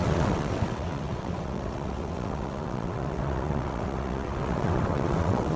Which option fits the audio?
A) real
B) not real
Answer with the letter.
B